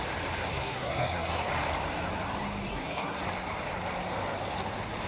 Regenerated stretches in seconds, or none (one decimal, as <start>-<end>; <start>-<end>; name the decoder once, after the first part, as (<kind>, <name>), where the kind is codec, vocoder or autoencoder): 0.5-1.5 (codec, SNAC); 2.7-3.2